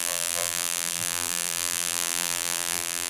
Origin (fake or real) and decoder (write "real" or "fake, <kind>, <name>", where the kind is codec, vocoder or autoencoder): fake, vocoder, BigVGAN v2